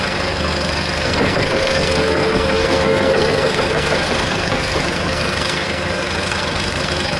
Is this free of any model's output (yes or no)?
no